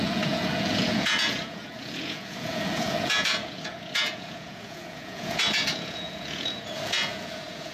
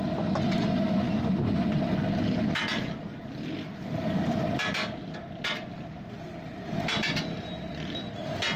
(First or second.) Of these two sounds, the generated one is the first